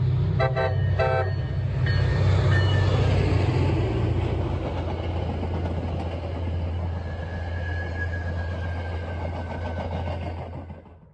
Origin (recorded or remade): recorded